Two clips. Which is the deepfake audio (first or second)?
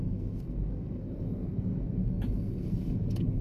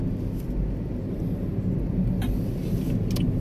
first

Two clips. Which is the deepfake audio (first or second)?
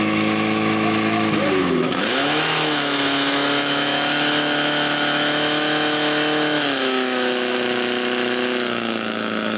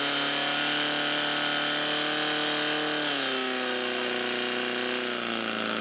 first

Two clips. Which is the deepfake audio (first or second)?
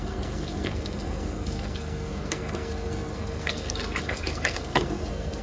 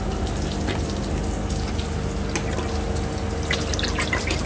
first